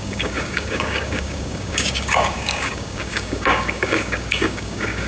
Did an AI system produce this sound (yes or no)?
yes